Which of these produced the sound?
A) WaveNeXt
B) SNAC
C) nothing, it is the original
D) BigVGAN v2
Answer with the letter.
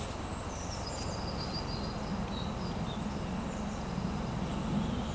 C